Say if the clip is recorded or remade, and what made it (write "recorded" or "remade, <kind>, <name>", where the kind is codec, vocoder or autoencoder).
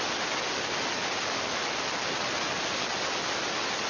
recorded